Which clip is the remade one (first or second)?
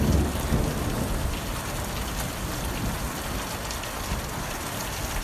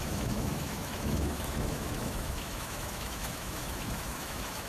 second